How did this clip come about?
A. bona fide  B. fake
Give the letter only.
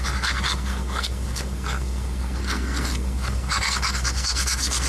B